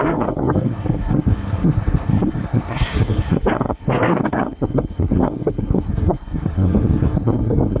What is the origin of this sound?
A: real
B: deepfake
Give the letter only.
B